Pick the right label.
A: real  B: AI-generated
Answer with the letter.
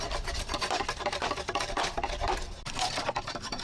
B